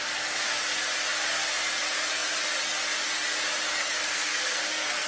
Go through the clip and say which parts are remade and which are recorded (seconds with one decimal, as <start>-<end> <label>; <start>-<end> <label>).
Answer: 0.0-3.8 recorded; 3.8-5.1 remade